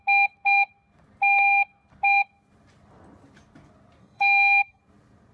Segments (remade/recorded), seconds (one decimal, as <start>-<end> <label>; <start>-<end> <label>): 0.0-4.0 recorded; 4.0-4.8 remade; 4.8-5.3 recorded